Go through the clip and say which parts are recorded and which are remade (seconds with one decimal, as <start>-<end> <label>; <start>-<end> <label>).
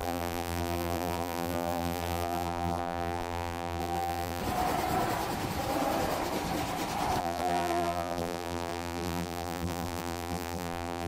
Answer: 0.0-4.4 remade; 4.4-7.2 recorded; 7.2-11.1 remade